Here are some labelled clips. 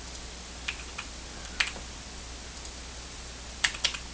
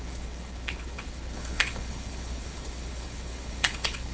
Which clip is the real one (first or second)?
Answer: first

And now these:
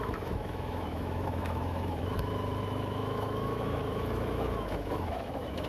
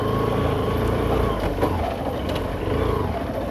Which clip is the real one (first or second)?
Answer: second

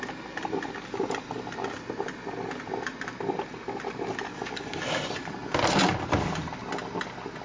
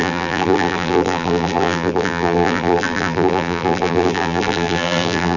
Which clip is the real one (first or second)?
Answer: first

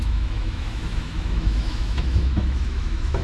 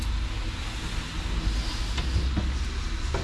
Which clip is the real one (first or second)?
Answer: second